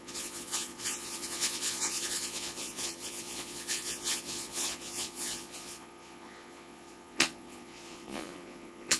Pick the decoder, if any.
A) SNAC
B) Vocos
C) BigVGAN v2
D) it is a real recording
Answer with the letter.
B